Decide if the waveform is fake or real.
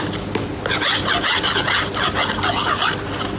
real